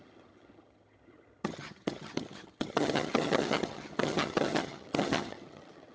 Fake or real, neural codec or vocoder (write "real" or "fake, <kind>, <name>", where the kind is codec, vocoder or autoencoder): fake, vocoder, HiFi-GAN